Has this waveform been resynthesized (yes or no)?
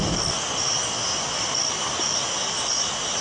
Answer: no